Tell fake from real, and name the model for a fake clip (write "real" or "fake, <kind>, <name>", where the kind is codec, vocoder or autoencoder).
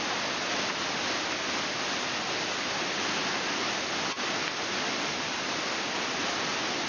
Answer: real